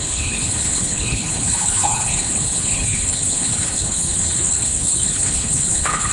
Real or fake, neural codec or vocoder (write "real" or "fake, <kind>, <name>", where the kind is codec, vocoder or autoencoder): fake, codec, HILCodec